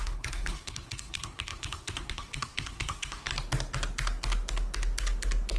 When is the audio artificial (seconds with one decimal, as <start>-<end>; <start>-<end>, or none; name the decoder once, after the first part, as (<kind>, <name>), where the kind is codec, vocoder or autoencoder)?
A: 0.0-3.3 (codec, SNAC)